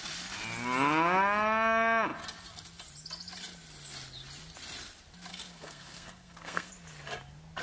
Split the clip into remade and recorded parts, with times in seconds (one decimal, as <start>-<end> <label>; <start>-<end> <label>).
0.0-5.3 recorded; 5.3-6.7 remade; 6.7-7.6 recorded